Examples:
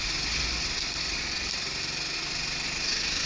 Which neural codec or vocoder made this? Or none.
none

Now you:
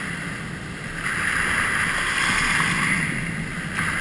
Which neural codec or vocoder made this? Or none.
none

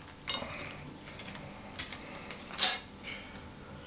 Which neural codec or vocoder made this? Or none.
none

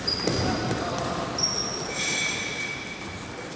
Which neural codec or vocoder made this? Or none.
none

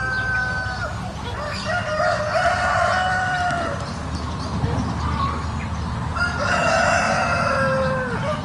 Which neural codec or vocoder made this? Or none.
none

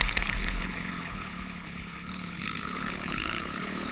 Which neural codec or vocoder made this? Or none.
codec, HILCodec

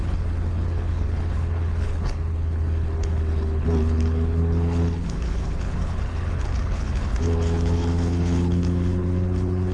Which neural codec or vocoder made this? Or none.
codec, HILCodec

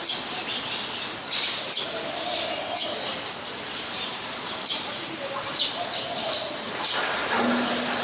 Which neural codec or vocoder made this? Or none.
none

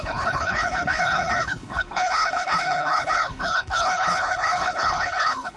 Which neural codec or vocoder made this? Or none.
codec, HILCodec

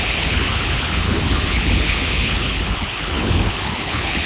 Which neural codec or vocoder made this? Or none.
codec, HILCodec